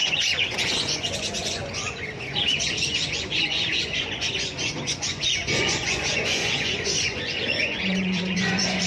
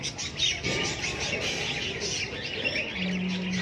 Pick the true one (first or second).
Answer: second